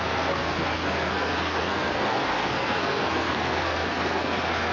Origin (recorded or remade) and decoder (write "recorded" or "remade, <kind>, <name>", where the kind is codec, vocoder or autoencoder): remade, codec, SNAC